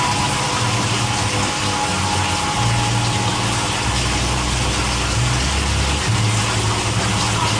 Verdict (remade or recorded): recorded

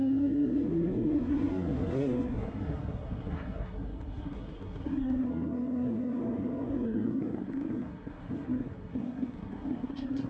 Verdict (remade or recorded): remade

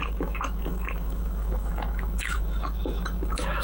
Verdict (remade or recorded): remade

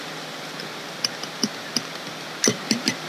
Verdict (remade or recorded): recorded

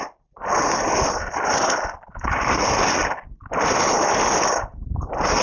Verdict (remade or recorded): recorded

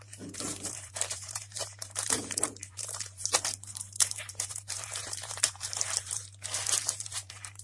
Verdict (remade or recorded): remade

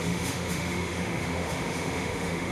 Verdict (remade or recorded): remade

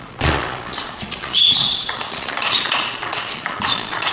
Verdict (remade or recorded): remade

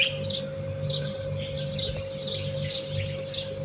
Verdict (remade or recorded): recorded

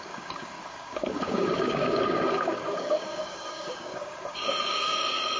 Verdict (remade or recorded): remade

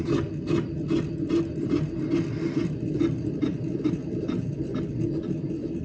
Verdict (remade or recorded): recorded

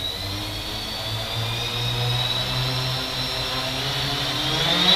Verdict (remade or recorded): recorded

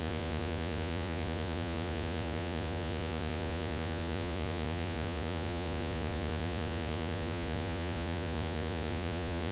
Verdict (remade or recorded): remade